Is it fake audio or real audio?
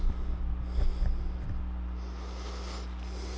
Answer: real